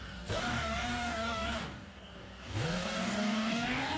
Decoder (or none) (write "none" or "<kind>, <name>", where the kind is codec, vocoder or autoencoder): codec, DAC